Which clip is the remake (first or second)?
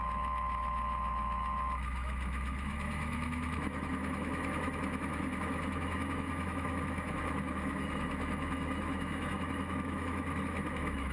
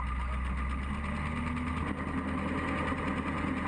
first